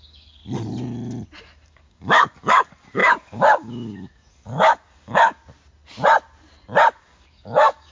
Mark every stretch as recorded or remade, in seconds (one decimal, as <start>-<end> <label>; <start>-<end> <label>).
0.0-0.4 remade; 0.4-1.4 recorded; 1.4-5.4 remade; 5.4-6.9 recorded; 6.9-7.9 remade